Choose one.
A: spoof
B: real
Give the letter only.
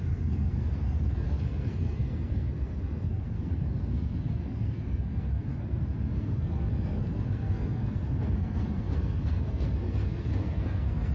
A